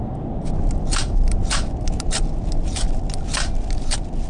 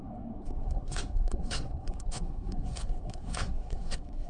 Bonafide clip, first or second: first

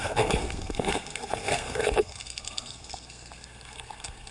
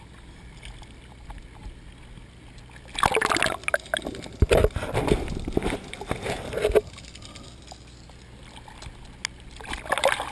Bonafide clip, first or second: second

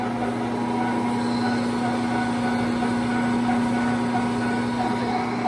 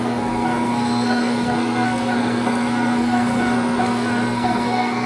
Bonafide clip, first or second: first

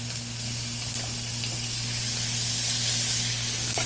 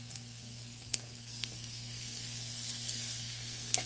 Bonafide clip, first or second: first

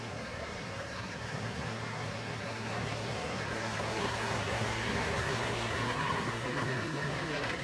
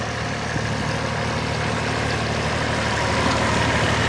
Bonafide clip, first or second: second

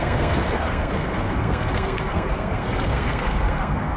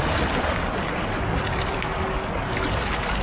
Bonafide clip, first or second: second